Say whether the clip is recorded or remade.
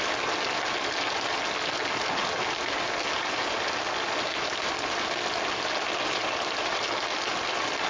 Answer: recorded